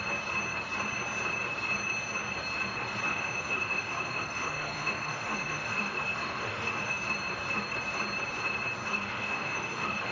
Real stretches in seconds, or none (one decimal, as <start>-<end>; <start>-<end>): 0.0-3.1; 7.0-8.8